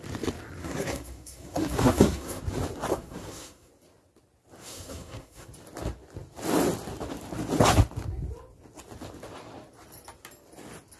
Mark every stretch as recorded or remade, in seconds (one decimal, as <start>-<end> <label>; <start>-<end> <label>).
0.0-0.6 recorded; 0.6-2.4 remade; 2.4-2.9 recorded; 2.9-3.7 remade; 3.7-4.6 recorded; 4.6-5.5 remade; 5.5-11.0 recorded